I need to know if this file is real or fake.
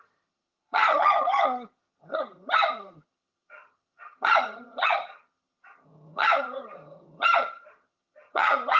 fake